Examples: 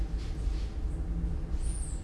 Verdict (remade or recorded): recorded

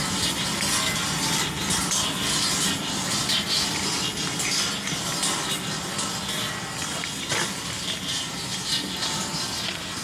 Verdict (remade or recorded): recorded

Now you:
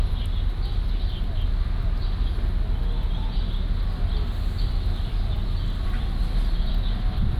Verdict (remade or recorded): recorded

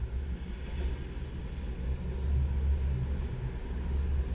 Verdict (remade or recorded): recorded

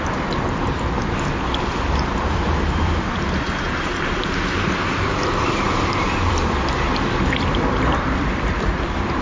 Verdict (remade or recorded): remade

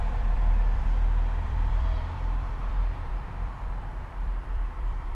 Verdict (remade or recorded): remade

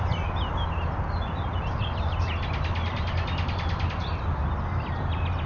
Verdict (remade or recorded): recorded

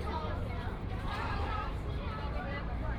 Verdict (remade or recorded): remade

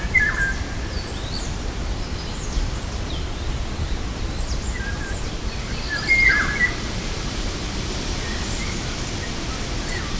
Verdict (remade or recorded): recorded